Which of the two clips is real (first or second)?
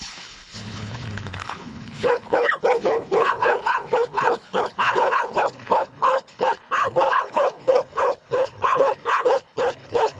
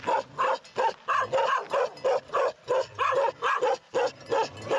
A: second